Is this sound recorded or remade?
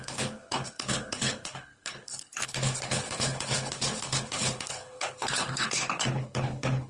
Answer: remade